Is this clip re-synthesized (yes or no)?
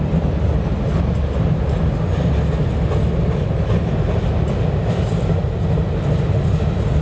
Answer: no